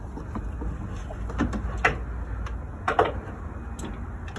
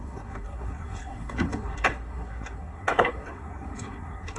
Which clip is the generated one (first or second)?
second